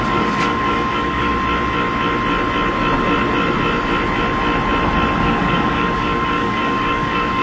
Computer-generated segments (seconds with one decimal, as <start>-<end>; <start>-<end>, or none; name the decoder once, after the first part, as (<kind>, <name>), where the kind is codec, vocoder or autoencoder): 0.0-1.3 (codec, DAC); 5.2-7.4